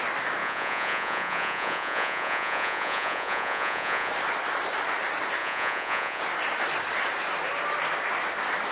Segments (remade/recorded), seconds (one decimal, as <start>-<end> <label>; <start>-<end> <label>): 0.0-0.4 recorded; 0.4-4.1 remade; 4.1-5.4 recorded; 5.4-6.2 remade; 6.2-8.7 recorded